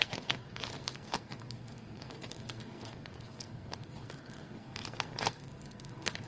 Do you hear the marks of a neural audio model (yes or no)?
yes